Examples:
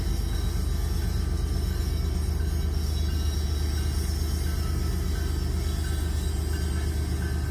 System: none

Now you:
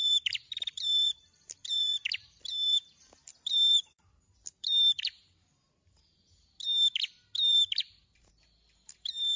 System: vocoder, BigVGAN v2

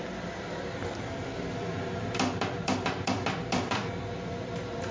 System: vocoder, BigVGAN v2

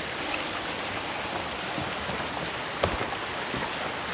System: none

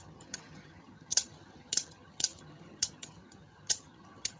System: vocoder, HiFi-GAN